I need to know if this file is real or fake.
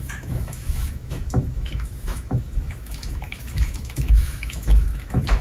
fake